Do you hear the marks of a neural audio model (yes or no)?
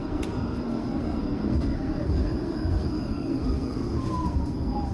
yes